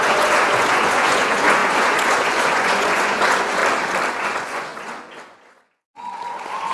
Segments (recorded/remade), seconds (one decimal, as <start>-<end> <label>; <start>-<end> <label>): 0.0-3.6 remade; 3.6-4.1 recorded; 4.1-6.7 remade